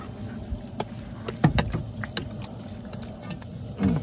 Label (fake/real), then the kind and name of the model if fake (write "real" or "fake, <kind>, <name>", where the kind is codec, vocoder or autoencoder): real